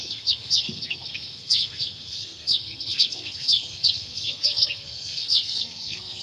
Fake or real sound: fake